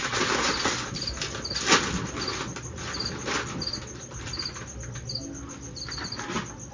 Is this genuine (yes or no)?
yes